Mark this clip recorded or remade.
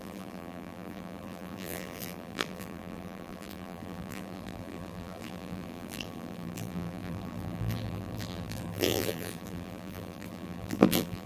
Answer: remade